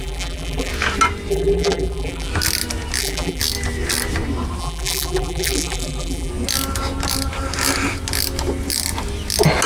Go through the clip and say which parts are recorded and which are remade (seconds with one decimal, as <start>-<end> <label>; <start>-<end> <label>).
0.0-0.7 remade; 0.7-1.3 recorded; 1.3-2.3 remade; 2.3-3.0 recorded; 3.0-3.4 remade; 3.4-4.6 recorded; 4.6-6.3 remade; 6.3-9.7 recorded